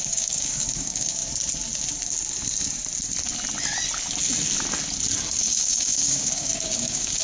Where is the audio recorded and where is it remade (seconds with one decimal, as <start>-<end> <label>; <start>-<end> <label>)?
0.0-1.2 remade; 1.2-5.4 recorded; 5.4-7.2 remade